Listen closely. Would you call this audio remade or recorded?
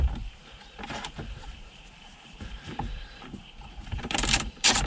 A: remade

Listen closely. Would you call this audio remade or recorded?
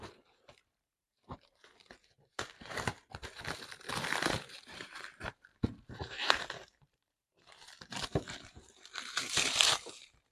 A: remade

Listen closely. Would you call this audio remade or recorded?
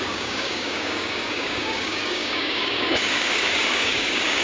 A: remade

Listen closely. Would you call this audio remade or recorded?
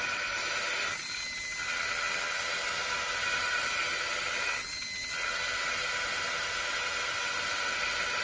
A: recorded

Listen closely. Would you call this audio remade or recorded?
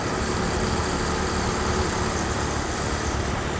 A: recorded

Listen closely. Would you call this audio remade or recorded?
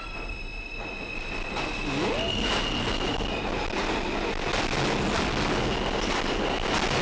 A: recorded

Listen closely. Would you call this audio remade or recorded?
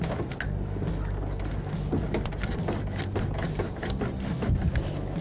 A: recorded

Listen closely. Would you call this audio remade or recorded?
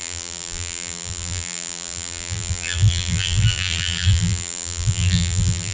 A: remade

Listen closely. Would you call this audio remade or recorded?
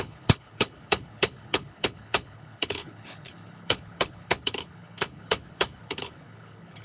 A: remade